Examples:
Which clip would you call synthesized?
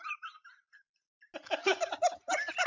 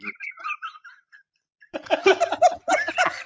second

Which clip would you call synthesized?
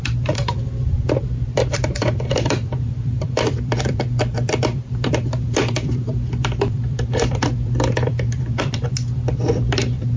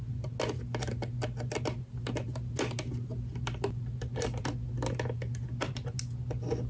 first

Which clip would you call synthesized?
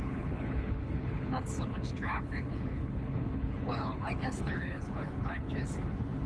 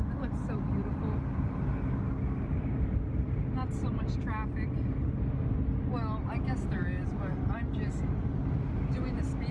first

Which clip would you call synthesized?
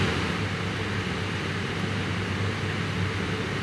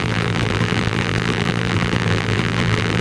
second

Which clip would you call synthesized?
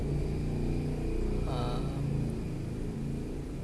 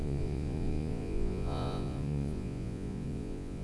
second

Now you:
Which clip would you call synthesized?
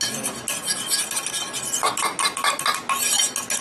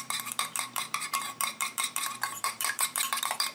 second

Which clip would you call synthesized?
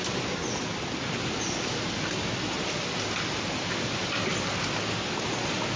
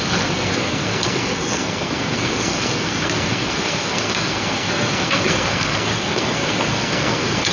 second